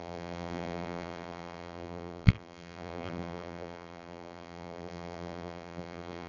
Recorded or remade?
remade